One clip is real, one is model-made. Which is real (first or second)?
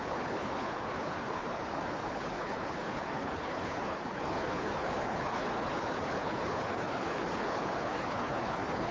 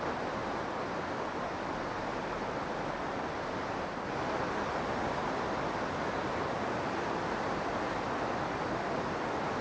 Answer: second